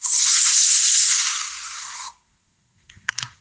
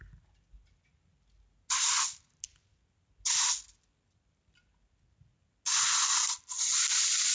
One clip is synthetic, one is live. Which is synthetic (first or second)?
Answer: first